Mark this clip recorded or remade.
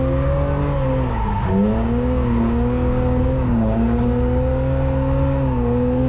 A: remade